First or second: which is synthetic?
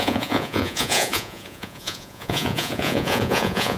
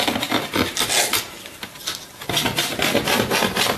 first